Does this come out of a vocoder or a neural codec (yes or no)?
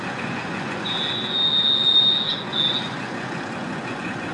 yes